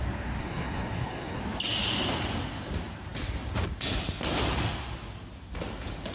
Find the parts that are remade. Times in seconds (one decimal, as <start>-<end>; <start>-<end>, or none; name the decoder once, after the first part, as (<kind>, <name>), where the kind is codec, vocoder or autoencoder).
0.4-1.4 (codec, SNAC)